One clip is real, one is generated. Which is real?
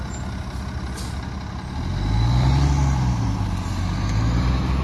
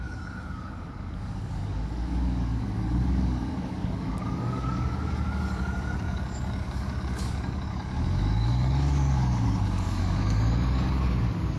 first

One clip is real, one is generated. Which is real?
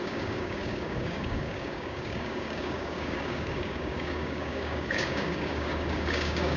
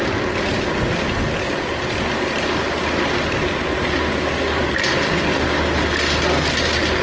second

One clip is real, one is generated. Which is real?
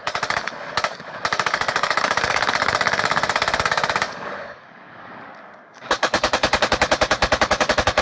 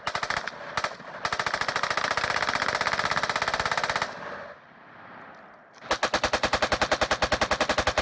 second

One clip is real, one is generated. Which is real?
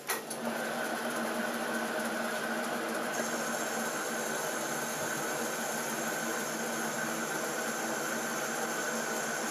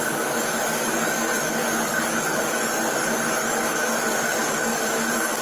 first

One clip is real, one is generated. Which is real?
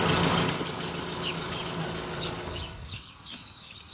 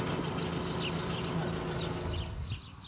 second